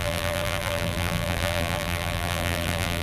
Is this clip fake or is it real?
fake